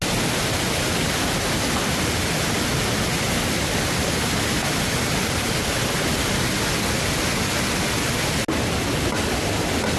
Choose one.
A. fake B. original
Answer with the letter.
B